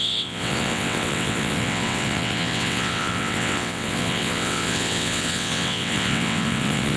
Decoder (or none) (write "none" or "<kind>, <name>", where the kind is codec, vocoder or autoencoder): vocoder, WaveNeXt